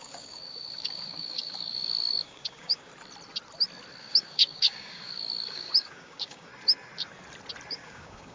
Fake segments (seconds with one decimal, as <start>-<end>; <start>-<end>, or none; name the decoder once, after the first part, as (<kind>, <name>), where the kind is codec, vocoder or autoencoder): 0.0-2.9 (codec, DAC); 4.0-6.5; 7.7-8.3